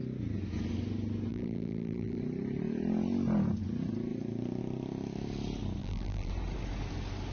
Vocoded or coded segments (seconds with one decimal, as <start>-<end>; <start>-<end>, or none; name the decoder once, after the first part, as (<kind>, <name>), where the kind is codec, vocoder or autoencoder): 1.3-2.2 (vocoder, BigVGAN v2); 5.8-6.3